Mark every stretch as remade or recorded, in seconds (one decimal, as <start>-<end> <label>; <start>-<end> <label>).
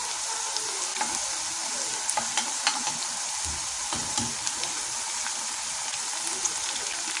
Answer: 0.0-0.9 recorded; 0.9-2.6 remade; 2.6-4.0 recorded; 4.0-5.0 remade; 5.0-7.2 recorded